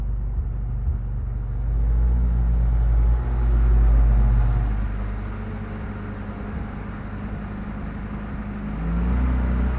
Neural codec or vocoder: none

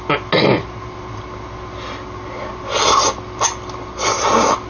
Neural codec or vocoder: none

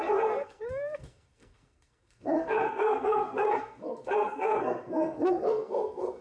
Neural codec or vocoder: codec, SNAC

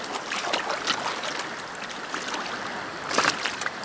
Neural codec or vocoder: none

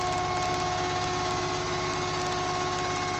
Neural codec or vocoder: none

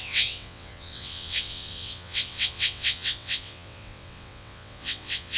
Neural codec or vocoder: vocoder, WaveNeXt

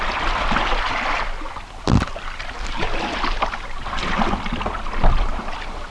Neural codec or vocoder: none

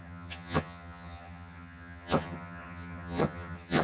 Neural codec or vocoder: vocoder, HiFi-GAN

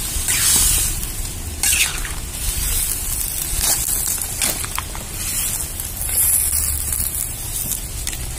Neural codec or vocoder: none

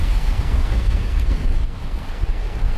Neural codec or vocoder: codec, SNAC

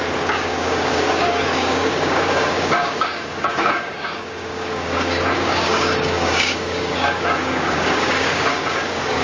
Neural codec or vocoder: codec, DAC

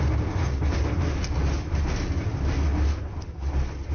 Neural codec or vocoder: none